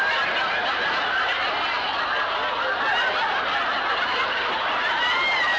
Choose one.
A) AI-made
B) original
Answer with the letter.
B